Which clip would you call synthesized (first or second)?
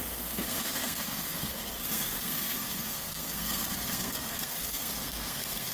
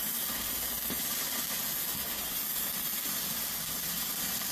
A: first